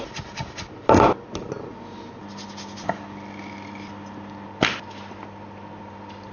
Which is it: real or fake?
real